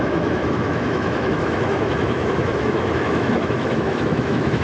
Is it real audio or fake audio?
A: fake